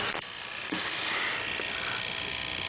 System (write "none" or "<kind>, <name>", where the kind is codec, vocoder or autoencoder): none